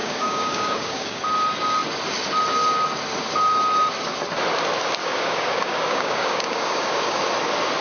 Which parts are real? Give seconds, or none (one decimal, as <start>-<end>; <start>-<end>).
1.2-5.0; 7.2-7.8